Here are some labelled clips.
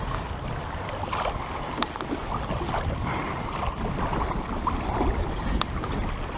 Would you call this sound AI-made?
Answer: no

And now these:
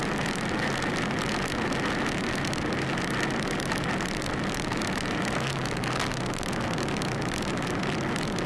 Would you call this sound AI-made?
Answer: no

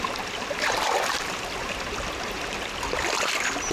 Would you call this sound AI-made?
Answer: no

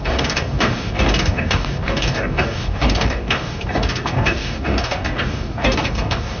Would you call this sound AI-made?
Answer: yes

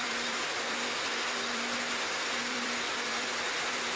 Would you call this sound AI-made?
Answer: yes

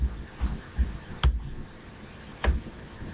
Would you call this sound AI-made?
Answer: no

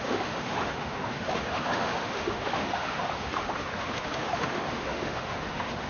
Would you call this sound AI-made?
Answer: yes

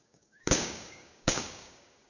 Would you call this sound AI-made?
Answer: yes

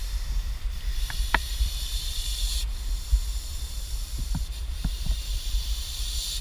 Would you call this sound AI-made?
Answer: yes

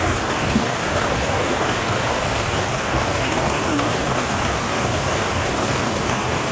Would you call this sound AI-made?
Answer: yes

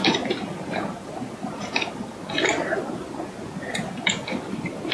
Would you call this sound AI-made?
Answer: no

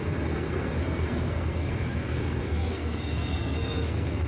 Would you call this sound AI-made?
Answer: yes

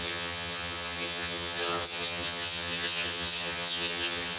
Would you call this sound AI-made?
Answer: yes